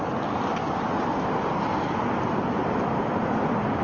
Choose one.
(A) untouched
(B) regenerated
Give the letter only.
A